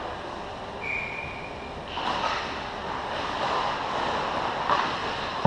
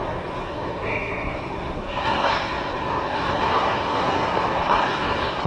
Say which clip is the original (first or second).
first